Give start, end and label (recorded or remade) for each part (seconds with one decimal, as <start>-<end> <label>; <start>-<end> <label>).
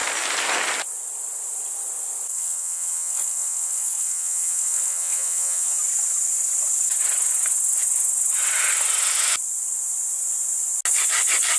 0.0-2.3 recorded; 2.3-5.8 remade; 5.8-11.6 recorded